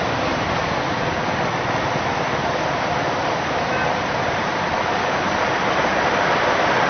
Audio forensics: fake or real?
real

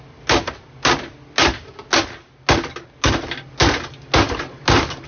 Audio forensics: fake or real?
real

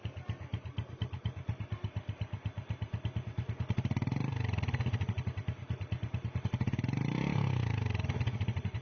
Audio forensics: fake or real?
real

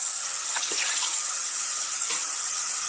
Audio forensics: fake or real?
fake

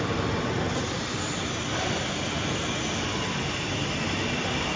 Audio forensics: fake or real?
real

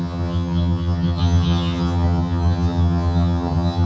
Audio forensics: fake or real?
fake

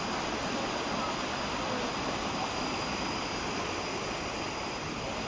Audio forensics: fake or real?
real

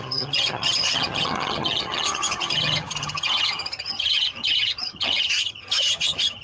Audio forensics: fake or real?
fake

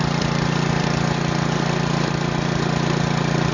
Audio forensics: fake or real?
real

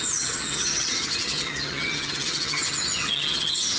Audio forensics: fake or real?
fake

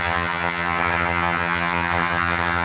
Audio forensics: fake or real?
fake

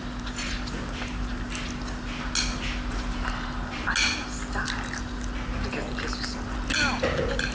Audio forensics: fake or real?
real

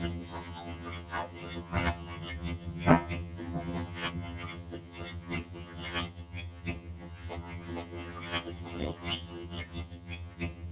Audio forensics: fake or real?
fake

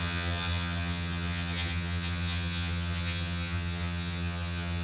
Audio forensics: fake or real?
fake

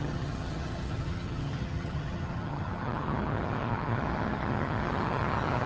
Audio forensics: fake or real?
fake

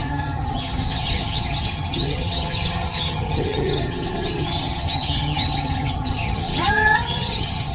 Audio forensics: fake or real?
fake